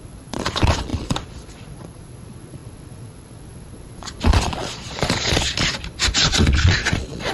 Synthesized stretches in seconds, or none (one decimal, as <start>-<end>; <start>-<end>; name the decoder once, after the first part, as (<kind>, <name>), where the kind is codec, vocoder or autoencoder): 0.0-7.3 (vocoder, Vocos)